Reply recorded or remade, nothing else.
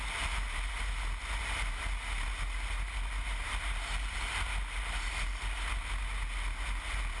recorded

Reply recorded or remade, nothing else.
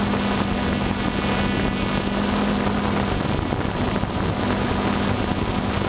recorded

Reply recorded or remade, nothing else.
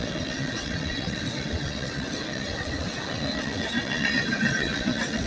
remade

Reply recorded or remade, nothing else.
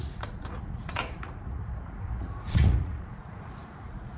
remade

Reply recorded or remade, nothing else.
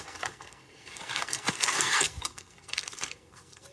remade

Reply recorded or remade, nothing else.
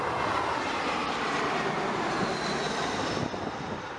recorded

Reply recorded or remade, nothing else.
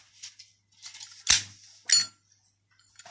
recorded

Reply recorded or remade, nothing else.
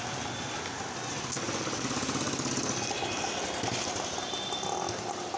recorded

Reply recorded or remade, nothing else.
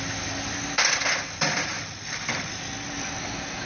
recorded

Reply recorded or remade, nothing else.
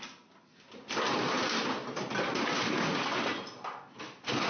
recorded